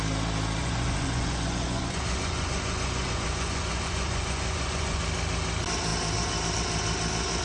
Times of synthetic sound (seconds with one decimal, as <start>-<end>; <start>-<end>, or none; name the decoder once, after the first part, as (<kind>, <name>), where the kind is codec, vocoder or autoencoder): 0.6-5.0 (vocoder, Vocos)

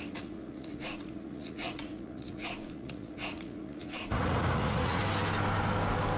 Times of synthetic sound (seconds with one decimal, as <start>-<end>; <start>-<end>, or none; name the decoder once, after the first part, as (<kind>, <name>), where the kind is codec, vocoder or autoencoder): 0.0-5.0 (vocoder, Vocos)

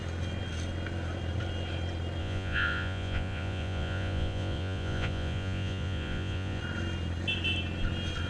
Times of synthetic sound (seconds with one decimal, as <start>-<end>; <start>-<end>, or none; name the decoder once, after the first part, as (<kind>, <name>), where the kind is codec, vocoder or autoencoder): 2.2-6.6 (vocoder, Vocos)

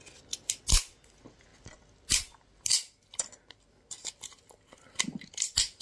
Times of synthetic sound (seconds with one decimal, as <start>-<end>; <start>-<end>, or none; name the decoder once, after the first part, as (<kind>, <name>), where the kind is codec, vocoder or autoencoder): none

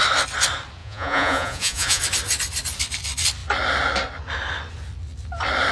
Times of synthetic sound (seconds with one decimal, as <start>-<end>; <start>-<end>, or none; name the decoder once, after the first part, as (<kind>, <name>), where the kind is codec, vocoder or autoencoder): 0.8-2.0 (vocoder, Vocos)